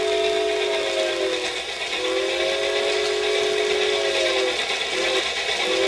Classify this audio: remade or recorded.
recorded